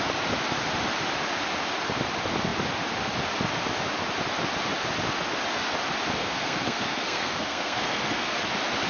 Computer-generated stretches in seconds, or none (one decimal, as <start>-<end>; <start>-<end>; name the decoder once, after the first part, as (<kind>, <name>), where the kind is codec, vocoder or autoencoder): 6.2-8.4 (codec, SNAC)